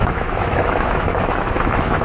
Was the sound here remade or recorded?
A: remade